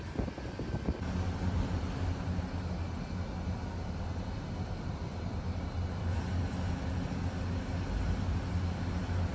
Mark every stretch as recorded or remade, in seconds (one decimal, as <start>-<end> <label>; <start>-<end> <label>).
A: 0.0-9.3 recorded